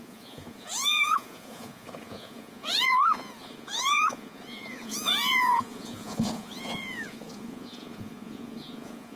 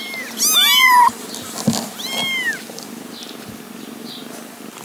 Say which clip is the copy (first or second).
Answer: first